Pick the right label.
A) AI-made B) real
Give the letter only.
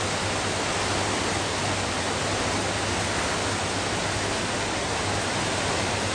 B